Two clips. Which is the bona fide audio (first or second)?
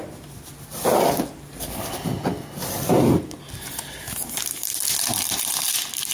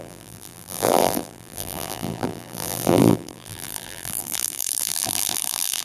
first